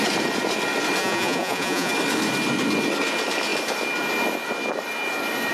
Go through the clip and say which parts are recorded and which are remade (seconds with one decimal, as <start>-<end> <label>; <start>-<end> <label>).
0.0-1.0 recorded; 1.0-1.9 remade; 1.9-5.5 recorded